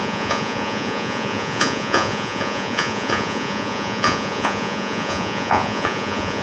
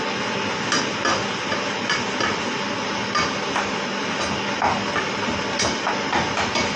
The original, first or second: second